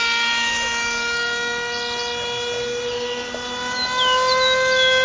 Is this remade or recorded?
recorded